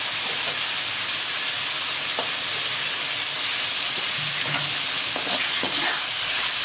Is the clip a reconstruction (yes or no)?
no